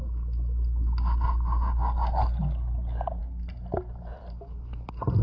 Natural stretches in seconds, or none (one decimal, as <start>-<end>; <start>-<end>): 0.0-5.2